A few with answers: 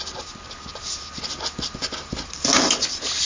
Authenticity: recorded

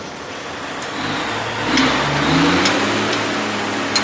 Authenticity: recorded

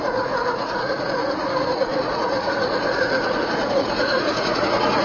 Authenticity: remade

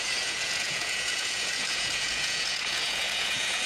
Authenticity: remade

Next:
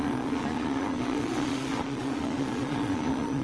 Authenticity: remade